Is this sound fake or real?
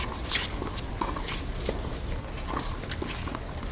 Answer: real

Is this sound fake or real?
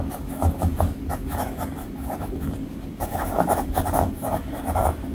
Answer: fake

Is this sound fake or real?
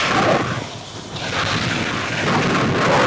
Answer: real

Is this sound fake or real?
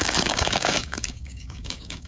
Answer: fake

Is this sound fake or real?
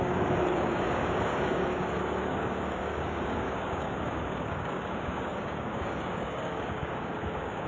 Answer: fake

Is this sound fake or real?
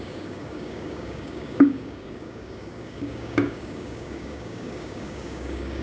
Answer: fake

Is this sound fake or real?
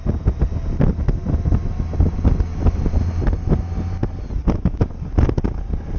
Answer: real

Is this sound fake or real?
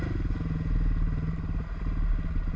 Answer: real